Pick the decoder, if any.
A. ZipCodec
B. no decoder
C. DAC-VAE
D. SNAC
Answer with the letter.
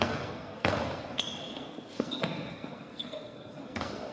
D